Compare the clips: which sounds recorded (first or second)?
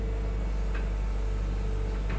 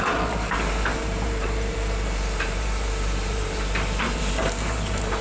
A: first